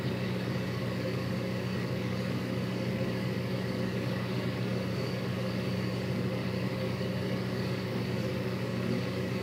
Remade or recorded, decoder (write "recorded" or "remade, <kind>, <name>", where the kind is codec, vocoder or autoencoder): remade, codec, DAC